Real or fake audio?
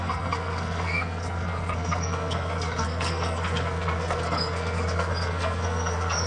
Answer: fake